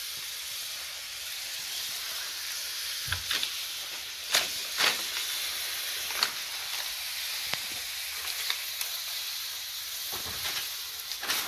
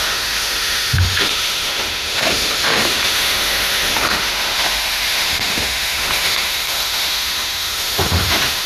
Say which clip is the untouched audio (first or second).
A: first